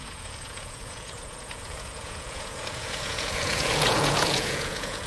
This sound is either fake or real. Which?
fake